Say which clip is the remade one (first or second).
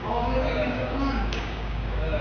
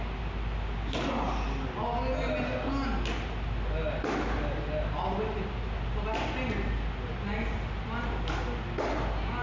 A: first